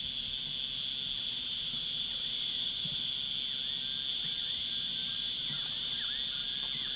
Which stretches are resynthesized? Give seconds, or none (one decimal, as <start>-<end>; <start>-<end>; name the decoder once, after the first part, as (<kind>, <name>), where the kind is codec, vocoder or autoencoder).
1.2-3.1 (vocoder, BigVGAN v2); 4.1-6.1